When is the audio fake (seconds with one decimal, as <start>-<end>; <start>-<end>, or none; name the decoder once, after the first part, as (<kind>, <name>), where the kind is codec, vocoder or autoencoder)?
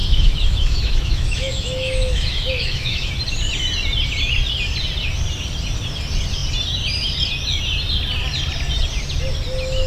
0.0-3.1 (autoencoder, DAC-VAE)